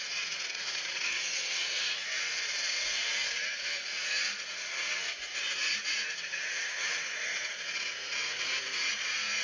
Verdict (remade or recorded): remade